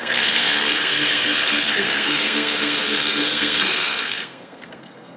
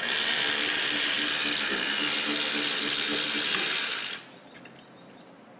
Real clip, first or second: second